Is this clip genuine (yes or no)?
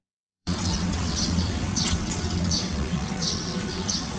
no